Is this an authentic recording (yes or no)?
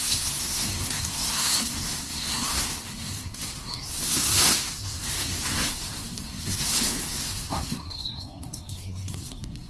no